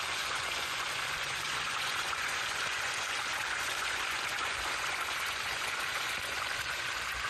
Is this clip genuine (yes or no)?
no